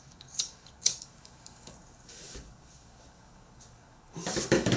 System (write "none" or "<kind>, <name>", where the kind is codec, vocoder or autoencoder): codec, DAC